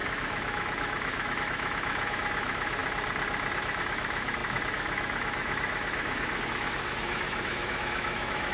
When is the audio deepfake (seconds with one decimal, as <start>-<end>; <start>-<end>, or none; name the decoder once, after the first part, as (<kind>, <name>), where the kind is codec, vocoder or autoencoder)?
0.0-2.8 (autoencoder, DAC-VAE); 3.6-8.5